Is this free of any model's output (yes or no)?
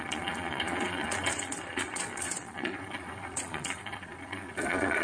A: no